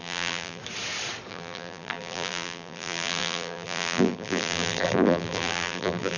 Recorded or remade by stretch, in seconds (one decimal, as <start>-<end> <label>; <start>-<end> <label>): 0.0-0.6 remade; 0.6-1.3 recorded; 1.3-6.2 remade